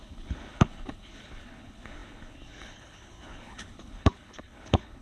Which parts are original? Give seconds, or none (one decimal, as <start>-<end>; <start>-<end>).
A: none